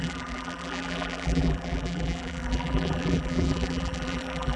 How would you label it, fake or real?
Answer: fake